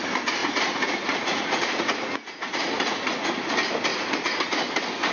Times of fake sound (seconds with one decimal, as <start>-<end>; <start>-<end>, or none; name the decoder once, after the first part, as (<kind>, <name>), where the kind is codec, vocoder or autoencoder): 0.4-3.5 (vocoder, Vocos); 3.9-4.6